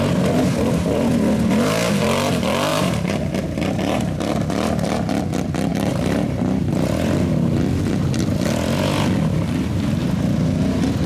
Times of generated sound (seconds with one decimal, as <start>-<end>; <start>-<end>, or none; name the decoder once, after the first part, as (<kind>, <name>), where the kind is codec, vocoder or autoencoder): 2.7-4.9 (vocoder, BigVGAN v2); 5.7-6.7